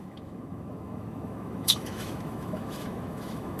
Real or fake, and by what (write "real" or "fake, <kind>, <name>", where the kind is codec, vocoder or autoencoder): fake, autoencoder, DAC-VAE